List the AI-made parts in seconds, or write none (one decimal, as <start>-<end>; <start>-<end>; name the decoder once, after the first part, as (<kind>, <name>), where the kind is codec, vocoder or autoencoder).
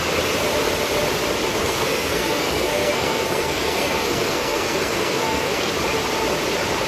1.6-5.7 (codec, SNAC)